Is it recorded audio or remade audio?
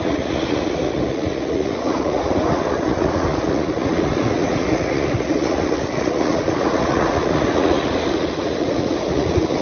remade